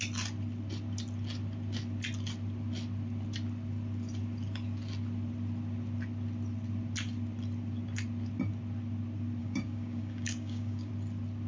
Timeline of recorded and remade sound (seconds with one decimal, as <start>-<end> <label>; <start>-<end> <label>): 0.0-9.4 recorded; 9.4-10.9 remade; 10.9-11.5 recorded